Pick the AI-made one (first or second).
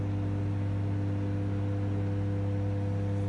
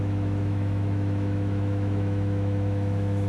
second